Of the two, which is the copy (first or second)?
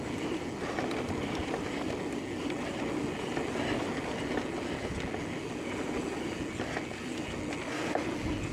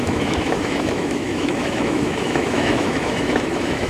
second